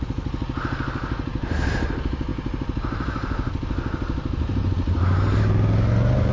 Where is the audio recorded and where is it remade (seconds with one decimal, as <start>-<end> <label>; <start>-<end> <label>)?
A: 0.0-6.3 recorded

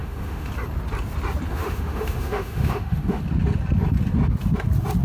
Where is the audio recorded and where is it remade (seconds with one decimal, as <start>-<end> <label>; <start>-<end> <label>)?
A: 0.0-0.5 remade; 0.5-1.5 recorded; 1.5-3.2 remade; 3.2-5.0 recorded

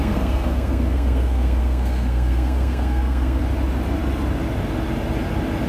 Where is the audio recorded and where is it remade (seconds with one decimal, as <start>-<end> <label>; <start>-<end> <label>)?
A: 0.0-3.4 remade; 3.4-5.7 recorded

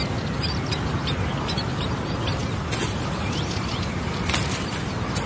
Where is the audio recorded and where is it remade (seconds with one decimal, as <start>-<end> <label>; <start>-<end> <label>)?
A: 0.0-5.3 recorded

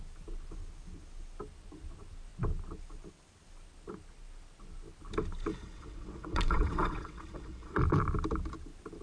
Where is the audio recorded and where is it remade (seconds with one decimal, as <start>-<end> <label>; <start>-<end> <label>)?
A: 0.0-5.5 recorded; 5.5-7.8 remade; 7.8-9.0 recorded